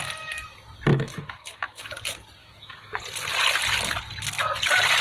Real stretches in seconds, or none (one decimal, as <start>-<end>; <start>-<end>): 0.0-0.9; 1.8-2.4; 3.0-5.0